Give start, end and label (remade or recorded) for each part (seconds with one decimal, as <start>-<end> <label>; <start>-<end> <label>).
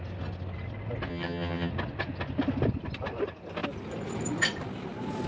0.0-1.1 recorded; 1.1-1.7 remade; 1.7-5.3 recorded